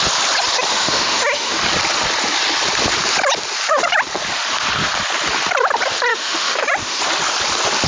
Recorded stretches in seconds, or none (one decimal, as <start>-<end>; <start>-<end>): 0.0-0.7; 1.6-6.1; 7.0-7.9